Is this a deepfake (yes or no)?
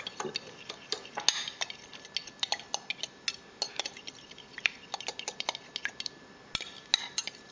no